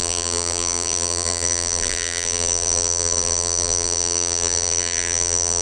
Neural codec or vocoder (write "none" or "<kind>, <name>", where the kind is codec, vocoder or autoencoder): vocoder, BigVGAN v2